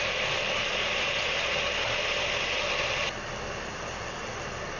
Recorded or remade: recorded